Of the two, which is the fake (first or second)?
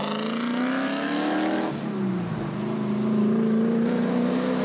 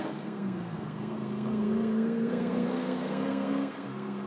second